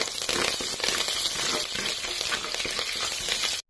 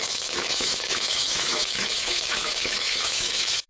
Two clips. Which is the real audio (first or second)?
first